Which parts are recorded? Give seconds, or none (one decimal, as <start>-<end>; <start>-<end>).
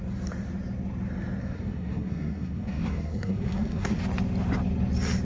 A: 0.0-1.4; 4.0-5.2